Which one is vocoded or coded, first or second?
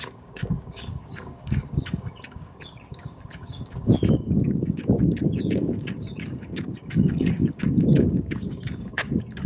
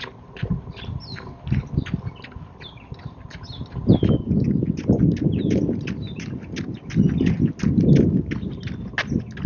first